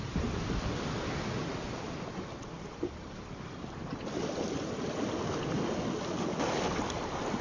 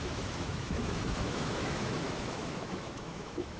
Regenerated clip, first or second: second